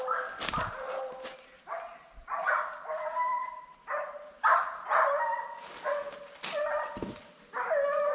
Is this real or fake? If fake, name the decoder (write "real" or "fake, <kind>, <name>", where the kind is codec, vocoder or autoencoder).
real